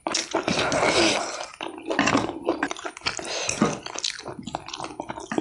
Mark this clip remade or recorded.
recorded